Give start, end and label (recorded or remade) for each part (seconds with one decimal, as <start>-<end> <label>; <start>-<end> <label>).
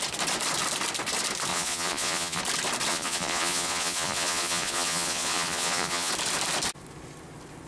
0.0-1.5 recorded; 1.5-2.4 remade; 2.4-2.9 recorded; 2.9-6.1 remade; 6.1-7.7 recorded